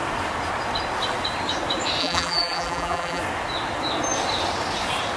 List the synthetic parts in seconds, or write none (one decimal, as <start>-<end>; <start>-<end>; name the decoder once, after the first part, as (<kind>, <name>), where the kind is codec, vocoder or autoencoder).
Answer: 2.0-3.2 (vocoder, BigVGAN v2)